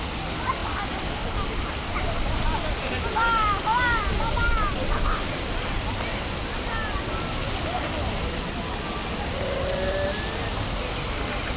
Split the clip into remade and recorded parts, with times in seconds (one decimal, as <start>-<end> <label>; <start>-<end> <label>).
0.0-11.6 recorded